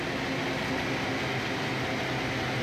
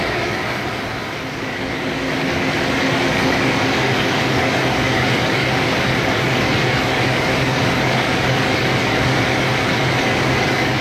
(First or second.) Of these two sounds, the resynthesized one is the second